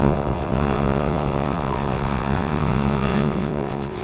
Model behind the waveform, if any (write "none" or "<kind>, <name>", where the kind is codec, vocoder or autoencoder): vocoder, WaveNeXt